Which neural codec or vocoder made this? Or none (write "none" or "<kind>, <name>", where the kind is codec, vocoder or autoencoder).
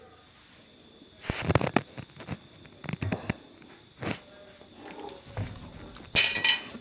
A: none